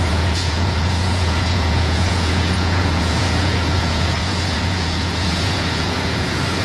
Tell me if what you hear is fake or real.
fake